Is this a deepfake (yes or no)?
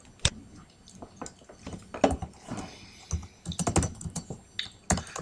no